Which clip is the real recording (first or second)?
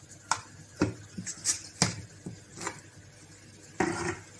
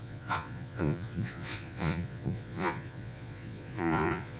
first